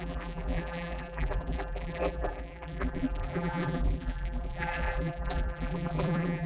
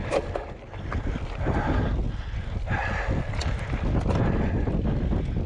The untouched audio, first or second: second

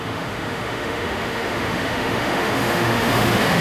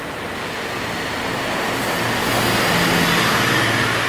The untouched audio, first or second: second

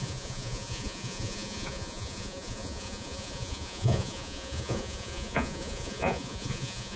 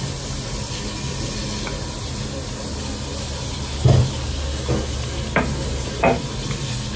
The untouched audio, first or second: second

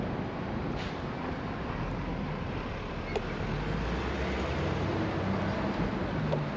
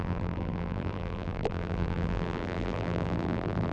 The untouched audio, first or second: first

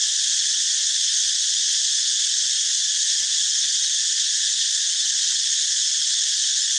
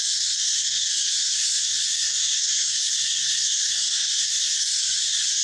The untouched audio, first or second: first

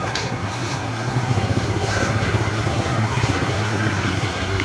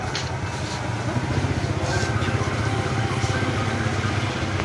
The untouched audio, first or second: second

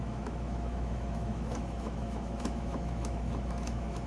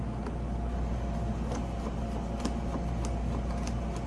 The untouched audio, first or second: second